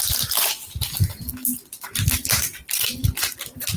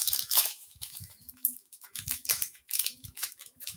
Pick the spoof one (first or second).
second